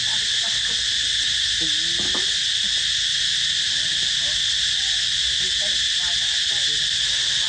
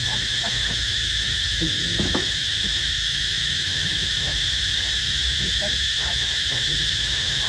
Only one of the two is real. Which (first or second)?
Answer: first